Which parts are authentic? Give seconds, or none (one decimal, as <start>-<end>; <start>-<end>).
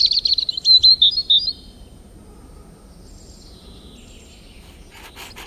0.0-5.5